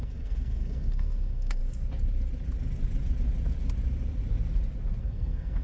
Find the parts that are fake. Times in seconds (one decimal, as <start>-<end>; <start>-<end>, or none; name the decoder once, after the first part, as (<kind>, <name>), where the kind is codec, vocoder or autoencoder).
0.0-1.6 (codec, SNAC); 5.0-5.6